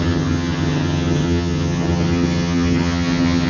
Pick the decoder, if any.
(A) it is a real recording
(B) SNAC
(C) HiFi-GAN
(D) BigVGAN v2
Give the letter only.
C